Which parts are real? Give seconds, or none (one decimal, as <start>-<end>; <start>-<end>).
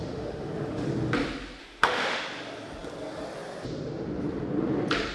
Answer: 0.9-1.6; 2.2-5.1